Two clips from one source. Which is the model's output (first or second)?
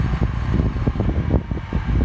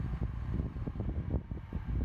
second